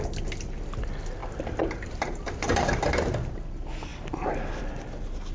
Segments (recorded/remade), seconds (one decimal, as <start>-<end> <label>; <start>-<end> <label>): 0.0-1.2 recorded; 1.2-3.3 remade; 3.3-5.3 recorded